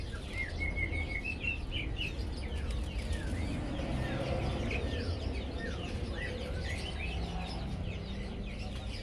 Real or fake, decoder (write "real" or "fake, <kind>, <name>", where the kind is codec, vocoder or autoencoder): real